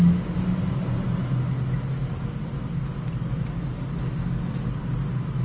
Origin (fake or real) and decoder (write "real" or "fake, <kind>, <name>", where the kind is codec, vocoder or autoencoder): real